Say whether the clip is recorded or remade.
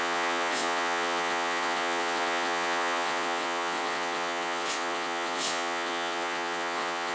remade